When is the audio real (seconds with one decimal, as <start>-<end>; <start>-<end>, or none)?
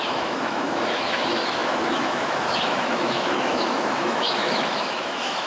none